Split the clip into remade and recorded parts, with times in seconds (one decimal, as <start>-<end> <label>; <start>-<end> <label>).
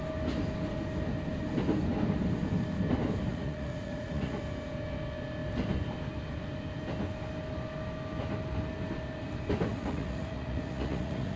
0.0-3.3 recorded; 3.3-4.4 remade; 4.4-9.7 recorded; 9.7-11.4 remade